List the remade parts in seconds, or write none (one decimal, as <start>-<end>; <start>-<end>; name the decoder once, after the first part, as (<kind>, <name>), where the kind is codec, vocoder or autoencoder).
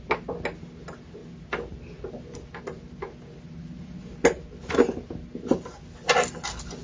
none